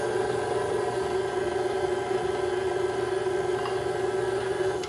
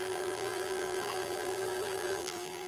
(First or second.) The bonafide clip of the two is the first